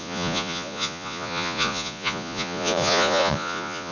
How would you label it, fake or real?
fake